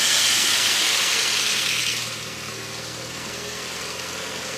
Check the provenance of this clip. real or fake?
fake